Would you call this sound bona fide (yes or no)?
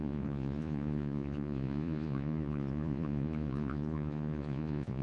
no